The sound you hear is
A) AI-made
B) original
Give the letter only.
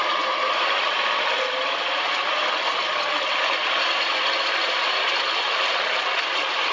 B